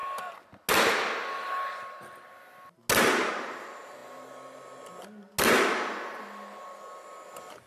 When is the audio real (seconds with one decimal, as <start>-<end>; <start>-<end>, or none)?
0.0-7.7

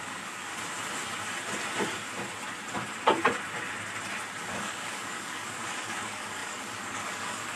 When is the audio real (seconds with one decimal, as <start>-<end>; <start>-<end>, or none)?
0.5-4.4

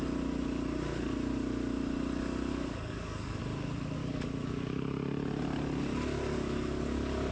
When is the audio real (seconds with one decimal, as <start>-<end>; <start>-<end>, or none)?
0.0-2.5; 3.4-4.0; 4.8-6.3

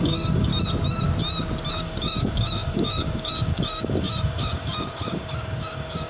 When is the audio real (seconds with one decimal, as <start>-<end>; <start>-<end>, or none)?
0.5-1.7

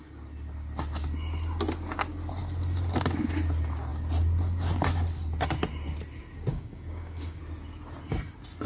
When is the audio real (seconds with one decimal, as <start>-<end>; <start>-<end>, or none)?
0.0-6.5; 7.4-8.7